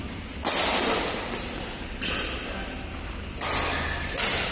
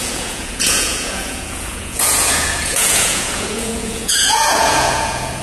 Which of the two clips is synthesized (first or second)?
second